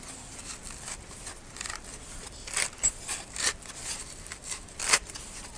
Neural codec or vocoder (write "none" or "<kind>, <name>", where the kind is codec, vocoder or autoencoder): vocoder, BigVGAN v2